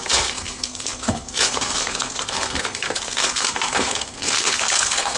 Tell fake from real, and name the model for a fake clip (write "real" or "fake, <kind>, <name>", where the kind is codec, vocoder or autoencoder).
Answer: fake, codec, SNAC